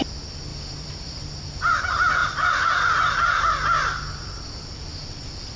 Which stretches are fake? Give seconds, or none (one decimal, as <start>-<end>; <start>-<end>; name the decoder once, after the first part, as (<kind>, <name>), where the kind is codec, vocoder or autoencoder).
0.5-1.8 (vocoder, BigVGAN v2); 2.2-3.4; 4.9-5.6